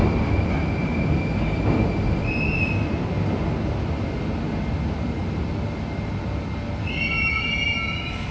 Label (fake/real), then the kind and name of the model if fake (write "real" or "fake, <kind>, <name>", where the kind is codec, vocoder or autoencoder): real